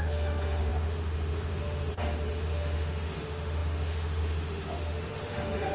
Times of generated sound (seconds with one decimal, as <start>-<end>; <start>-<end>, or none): 0.0-5.7